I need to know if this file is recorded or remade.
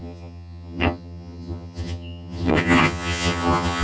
remade